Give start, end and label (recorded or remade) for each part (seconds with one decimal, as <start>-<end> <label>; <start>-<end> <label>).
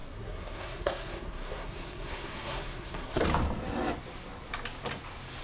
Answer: 0.0-3.2 remade; 3.2-5.4 recorded